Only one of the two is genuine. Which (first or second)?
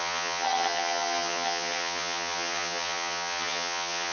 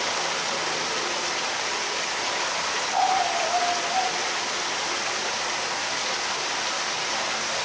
second